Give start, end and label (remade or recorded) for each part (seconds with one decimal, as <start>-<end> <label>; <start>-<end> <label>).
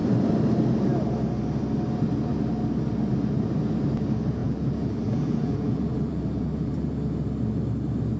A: 0.0-4.4 recorded; 4.4-6.9 remade; 6.9-8.2 recorded